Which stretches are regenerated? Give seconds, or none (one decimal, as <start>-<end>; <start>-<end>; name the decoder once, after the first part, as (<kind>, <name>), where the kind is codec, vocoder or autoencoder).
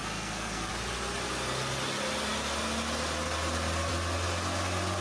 0.0-0.7 (codec, SNAC)